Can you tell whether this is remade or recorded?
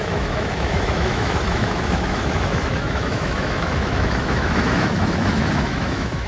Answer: remade